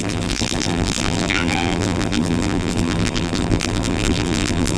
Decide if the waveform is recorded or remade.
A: remade